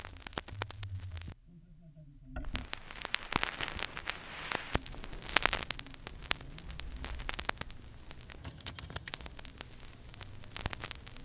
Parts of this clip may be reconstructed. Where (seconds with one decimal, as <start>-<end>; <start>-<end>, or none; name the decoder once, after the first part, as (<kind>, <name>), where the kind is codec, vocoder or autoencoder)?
8.4-9.1 (vocoder, HiFi-GAN)